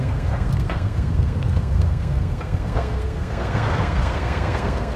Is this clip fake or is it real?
fake